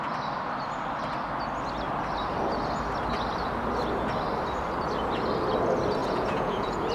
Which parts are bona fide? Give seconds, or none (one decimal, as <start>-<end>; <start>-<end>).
0.0-6.0